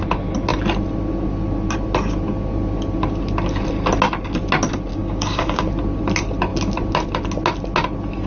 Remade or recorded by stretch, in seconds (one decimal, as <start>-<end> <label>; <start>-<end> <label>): 0.0-4.9 recorded; 4.9-5.6 remade; 5.6-8.3 recorded